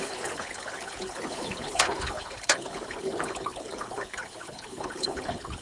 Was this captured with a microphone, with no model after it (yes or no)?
no